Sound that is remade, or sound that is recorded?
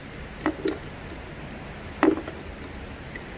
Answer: recorded